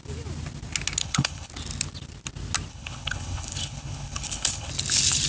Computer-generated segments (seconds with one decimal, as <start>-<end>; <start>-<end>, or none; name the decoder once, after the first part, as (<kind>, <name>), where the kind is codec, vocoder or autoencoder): 1.0-1.5 (codec, HILCodec); 2.7-4.7